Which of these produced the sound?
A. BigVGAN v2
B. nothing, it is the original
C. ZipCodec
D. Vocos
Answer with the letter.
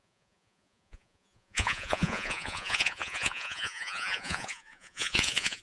D